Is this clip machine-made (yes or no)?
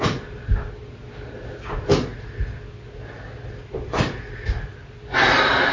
no